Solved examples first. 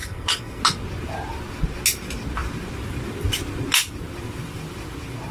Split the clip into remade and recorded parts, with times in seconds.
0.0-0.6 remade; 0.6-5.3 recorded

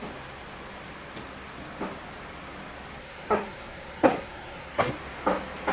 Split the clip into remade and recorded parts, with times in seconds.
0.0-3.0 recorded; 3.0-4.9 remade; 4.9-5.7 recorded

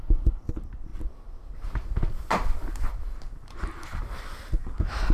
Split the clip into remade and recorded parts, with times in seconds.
0.0-5.1 recorded